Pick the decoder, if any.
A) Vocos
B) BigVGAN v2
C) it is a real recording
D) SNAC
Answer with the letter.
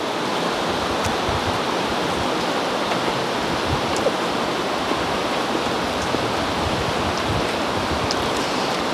C